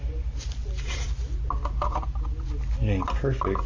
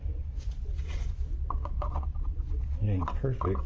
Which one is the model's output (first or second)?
second